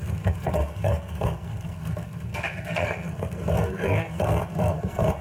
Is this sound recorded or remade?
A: remade